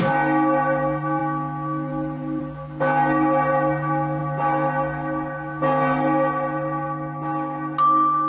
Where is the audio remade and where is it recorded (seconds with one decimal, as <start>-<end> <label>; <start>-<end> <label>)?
0.0-8.3 recorded